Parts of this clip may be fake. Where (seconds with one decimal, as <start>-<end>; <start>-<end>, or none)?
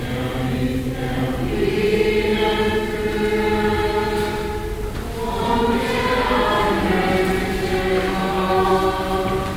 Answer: 7.9-8.7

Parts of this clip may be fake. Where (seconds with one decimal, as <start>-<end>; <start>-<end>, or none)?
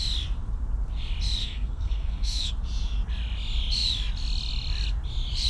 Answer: 1.4-2.5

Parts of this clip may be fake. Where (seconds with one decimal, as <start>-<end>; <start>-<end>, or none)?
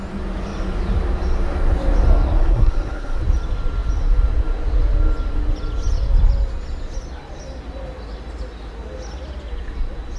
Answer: 2.4-3.2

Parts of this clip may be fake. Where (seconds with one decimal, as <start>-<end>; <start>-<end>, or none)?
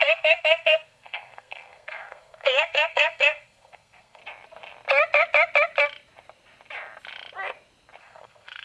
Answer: 0.0-4.2; 8.0-8.6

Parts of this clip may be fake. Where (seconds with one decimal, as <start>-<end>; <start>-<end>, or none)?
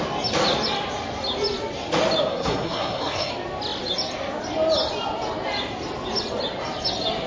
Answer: 2.3-3.3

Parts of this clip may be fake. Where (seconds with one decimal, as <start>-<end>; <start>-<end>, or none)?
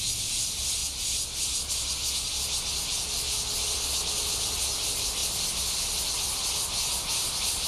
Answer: none